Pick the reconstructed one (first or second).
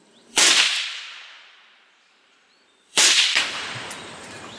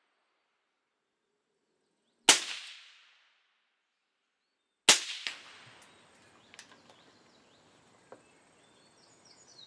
first